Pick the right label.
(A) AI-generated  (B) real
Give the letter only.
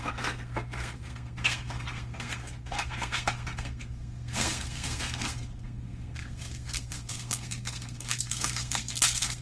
A